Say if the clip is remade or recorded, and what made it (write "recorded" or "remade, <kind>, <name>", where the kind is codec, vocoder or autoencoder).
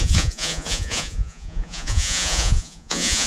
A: remade, vocoder, Vocos